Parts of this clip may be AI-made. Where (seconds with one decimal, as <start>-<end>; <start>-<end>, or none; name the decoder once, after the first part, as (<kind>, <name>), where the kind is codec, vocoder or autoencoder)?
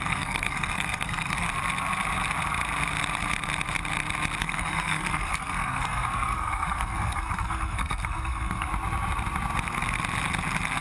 0.0-1.5 (codec, SNAC); 4.4-8.7